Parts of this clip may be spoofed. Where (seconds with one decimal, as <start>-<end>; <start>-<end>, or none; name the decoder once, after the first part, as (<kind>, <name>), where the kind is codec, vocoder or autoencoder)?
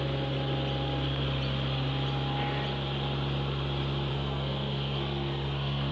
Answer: 4.1-5.9 (codec, SNAC)